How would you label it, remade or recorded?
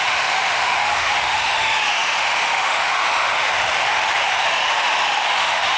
remade